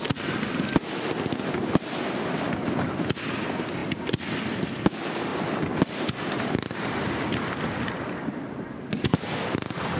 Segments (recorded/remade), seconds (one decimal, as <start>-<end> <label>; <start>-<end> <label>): 0.0-10.0 recorded